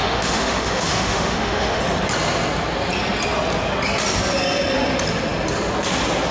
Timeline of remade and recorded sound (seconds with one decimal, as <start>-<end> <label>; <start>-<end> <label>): 0.0-1.8 remade; 1.8-6.3 recorded